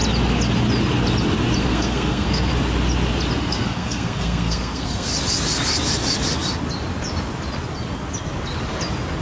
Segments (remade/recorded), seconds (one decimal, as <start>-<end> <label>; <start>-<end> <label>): 0.0-1.6 recorded; 1.6-2.5 remade; 2.5-3.4 recorded; 3.4-5.1 remade; 5.1-9.2 recorded